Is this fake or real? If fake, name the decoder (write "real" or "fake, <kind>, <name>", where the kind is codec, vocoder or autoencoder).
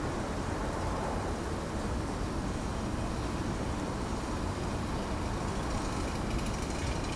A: real